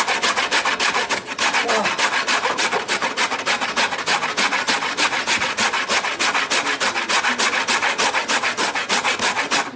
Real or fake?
real